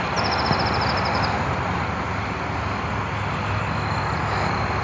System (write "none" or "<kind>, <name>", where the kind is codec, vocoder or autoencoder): none